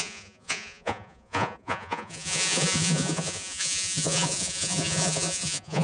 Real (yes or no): no